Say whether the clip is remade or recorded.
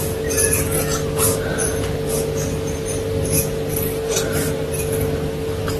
recorded